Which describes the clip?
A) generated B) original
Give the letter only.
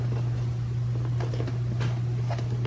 B